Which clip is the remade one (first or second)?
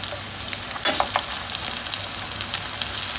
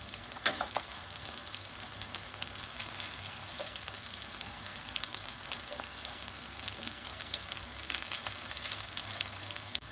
second